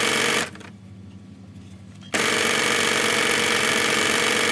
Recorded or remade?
recorded